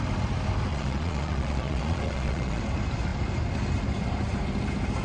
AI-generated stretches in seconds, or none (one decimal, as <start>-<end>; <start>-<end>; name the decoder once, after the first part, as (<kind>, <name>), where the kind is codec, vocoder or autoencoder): 0.7-2.6 (vocoder, Vocos)